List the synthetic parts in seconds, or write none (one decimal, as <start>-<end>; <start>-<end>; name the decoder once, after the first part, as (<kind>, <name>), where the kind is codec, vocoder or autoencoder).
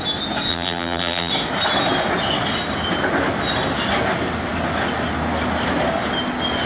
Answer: 0.5-1.3 (vocoder, BigVGAN v2)